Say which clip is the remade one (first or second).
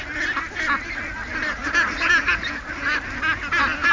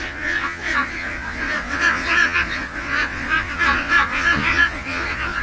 second